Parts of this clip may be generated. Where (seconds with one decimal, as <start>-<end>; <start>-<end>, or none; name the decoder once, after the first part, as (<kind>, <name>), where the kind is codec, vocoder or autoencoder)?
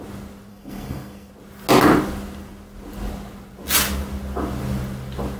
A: 0.5-1.3 (codec, SNAC)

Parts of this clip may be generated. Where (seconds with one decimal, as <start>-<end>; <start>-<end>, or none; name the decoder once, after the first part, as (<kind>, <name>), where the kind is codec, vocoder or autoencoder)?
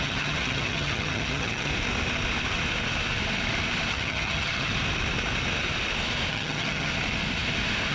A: 0.0-1.7 (vocoder, HiFi-GAN); 3.9-4.7; 6.3-6.9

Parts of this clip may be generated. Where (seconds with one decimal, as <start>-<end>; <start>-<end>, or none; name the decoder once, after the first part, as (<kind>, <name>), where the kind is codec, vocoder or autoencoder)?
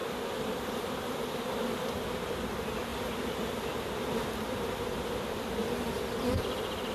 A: 0.6-2.9 (vocoder, BigVGAN v2); 4.5-5.6; 6.3-6.9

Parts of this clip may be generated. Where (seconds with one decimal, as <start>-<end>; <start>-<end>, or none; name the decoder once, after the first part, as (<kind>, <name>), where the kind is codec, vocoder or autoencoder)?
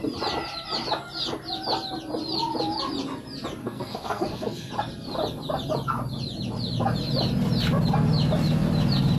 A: 3.6-4.7 (codec, SNAC)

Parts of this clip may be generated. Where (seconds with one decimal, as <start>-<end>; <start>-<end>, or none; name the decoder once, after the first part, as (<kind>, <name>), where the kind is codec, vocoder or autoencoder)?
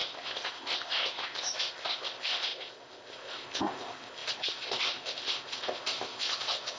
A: 0.0-6.8 (codec, ZipCodec)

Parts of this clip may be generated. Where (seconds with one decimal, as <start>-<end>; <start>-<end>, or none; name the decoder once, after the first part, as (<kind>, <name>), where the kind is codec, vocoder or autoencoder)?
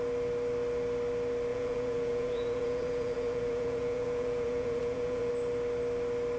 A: 1.5-5.3 (vocoder, Vocos)